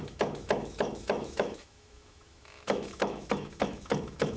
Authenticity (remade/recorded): remade